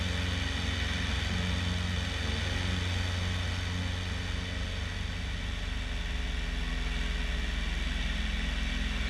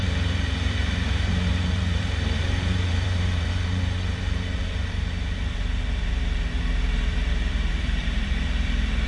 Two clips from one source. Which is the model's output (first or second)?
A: second